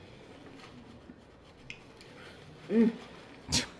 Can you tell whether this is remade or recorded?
recorded